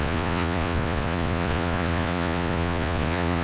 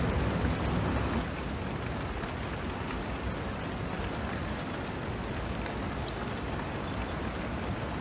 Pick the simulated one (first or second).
first